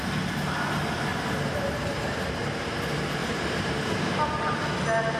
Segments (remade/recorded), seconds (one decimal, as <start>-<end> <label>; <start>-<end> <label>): 0.0-1.1 recorded; 1.1-2.7 remade; 2.7-3.2 recorded; 3.2-4.0 remade; 4.0-5.2 recorded